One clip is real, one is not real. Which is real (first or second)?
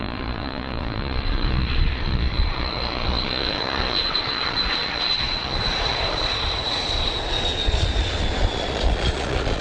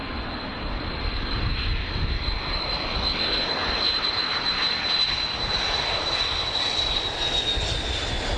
second